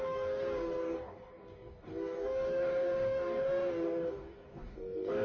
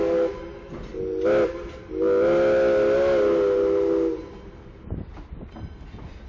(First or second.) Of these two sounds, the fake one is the first